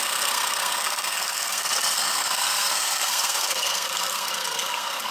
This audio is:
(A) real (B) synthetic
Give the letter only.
B